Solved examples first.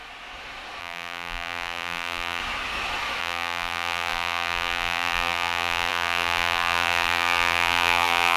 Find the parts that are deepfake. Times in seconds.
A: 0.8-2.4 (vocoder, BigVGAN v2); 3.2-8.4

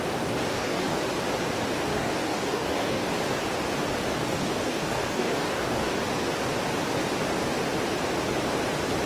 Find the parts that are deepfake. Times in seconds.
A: 0.5-1.0 (codec, DAC); 1.9-3.1; 4.1-6.0

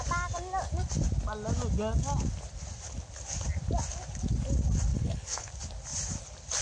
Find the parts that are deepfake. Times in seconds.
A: 4.9-5.5 (codec, HILCodec)

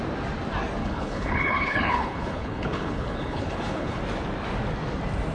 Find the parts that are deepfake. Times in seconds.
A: 0.8-4.0 (codec, HILCodec)

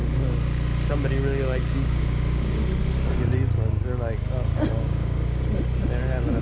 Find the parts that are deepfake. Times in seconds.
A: 0.9-2.6 (codec, DAC); 4.5-5.4

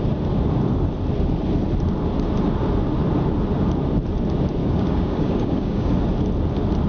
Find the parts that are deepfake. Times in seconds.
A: 4.6-5.9 (codec, DAC)